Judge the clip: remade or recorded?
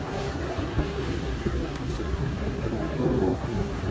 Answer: remade